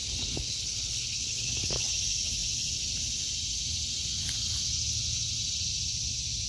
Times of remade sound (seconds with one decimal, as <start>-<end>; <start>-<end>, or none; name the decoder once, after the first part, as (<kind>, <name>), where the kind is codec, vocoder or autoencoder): 0.0-1.9 (codec, HILCodec)